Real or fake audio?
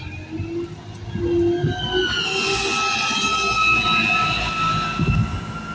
real